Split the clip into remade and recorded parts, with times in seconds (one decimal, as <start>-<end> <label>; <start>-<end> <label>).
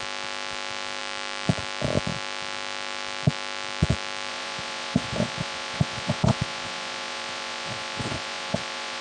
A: 0.0-4.3 recorded; 4.3-9.0 remade